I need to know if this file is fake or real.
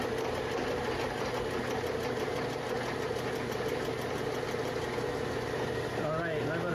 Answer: real